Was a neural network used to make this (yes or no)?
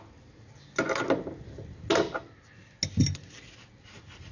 no